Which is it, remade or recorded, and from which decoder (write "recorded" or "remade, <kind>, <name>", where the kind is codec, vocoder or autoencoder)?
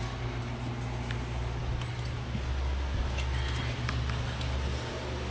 recorded